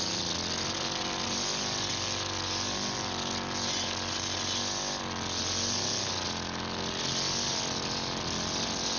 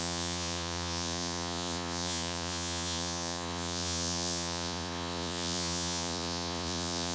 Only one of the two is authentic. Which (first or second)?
first